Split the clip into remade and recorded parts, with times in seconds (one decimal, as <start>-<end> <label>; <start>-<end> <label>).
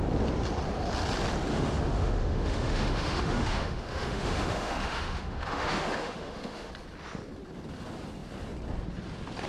0.0-1.5 recorded; 1.5-6.7 remade; 6.7-9.5 recorded